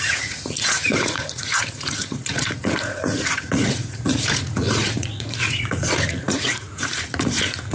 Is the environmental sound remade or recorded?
remade